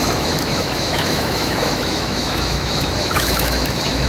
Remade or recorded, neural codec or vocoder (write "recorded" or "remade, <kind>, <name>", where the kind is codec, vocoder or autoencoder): remade, autoencoder, DAC-VAE